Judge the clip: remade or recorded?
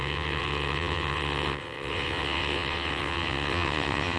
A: remade